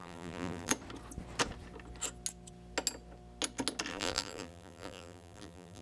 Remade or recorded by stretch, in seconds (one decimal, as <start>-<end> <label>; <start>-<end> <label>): 0.0-0.7 remade; 0.7-3.9 recorded; 3.9-5.8 remade